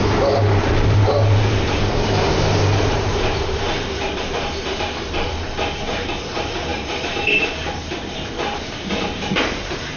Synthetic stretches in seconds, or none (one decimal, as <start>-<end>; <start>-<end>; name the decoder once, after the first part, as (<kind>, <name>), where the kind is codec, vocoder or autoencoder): 0.0-10.0 (vocoder, BigVGAN v2)